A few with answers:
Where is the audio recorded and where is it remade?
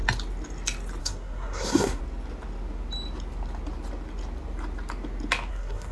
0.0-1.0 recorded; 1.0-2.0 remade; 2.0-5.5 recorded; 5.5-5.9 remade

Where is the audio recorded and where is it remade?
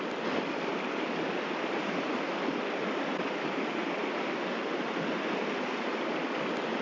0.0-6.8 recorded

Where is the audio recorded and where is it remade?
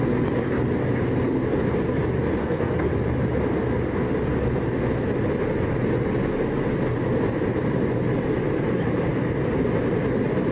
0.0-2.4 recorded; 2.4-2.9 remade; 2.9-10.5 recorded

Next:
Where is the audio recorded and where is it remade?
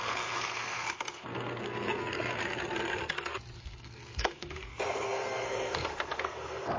0.0-2.4 remade; 2.4-3.6 recorded; 3.6-6.8 remade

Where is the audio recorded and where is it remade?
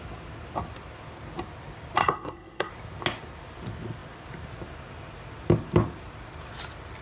0.0-2.0 recorded; 2.0-2.7 remade; 2.7-7.0 recorded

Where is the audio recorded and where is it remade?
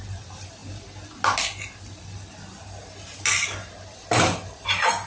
0.0-5.1 recorded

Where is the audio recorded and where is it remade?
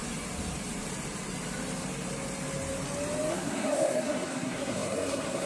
0.0-3.3 recorded; 3.3-5.5 remade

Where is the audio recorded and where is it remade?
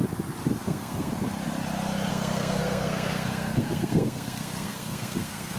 0.0-0.6 recorded; 0.6-1.1 remade; 1.1-2.1 recorded; 2.1-5.6 remade